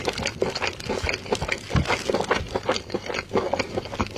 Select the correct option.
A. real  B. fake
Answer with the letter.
A